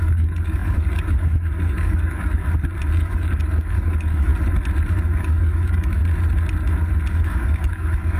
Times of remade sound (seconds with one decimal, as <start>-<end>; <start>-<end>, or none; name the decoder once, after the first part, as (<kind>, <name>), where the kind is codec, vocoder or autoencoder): 0.0-2.4 (codec, DAC); 3.0-4.3; 4.9-6.0; 7.1-8.2

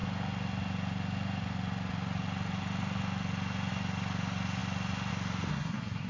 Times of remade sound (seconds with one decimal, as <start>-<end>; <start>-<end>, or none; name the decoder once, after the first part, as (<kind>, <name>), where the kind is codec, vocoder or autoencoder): 5.5-6.1 (codec, SNAC)

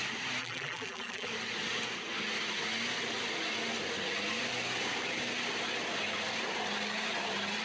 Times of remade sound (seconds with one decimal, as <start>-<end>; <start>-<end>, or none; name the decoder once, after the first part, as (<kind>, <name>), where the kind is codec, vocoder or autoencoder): 0.4-1.3 (vocoder, BigVGAN v2)

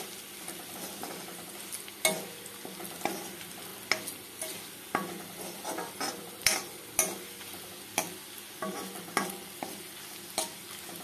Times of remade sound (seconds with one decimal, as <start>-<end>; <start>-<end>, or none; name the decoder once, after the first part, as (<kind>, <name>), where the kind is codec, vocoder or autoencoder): none

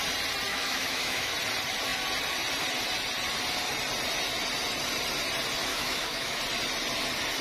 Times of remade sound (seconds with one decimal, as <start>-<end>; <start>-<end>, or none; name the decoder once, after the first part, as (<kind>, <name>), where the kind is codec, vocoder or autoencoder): 0.5-1.3 (autoencoder, DAC-VAE); 5.7-6.4

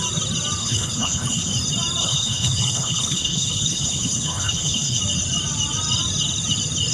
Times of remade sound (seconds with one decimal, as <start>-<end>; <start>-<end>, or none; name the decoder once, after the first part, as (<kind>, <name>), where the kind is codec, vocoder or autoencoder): 0.6-1.5 (codec, HILCodec); 2.0-5.0

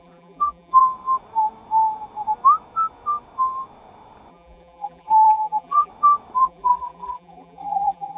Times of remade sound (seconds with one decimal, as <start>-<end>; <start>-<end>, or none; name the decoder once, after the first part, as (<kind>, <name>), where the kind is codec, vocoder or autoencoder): 0.0-0.8 (vocoder, BigVGAN v2); 4.3-5.9; 6.4-8.2